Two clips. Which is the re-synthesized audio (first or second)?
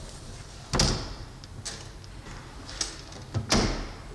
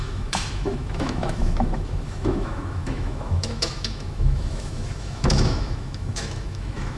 second